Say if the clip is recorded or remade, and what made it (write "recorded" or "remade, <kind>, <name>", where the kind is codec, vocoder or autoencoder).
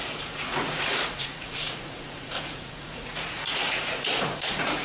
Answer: remade, vocoder, Vocos